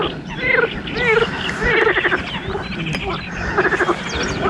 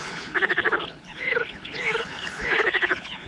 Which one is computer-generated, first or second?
second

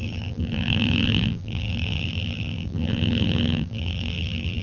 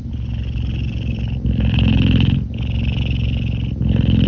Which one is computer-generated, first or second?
first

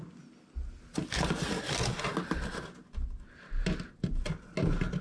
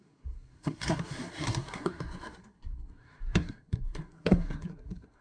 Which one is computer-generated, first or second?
second